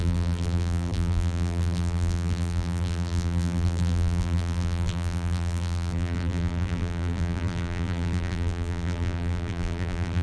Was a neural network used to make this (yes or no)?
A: yes